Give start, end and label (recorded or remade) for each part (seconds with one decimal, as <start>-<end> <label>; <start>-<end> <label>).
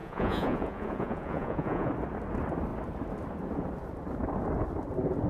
0.0-1.9 remade; 1.9-5.3 recorded